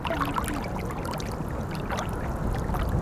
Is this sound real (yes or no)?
yes